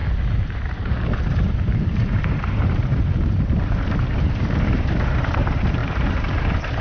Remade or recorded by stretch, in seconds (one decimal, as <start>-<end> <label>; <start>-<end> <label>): 0.0-0.5 recorded; 0.5-6.8 remade